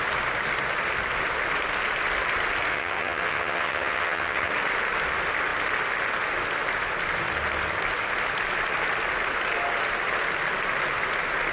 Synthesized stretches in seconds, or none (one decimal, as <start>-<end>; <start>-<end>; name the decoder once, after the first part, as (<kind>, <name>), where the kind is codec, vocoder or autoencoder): 2.7-4.5 (vocoder, HiFi-GAN)